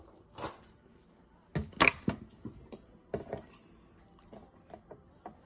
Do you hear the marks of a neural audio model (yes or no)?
no